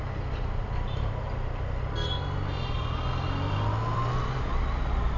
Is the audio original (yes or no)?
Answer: yes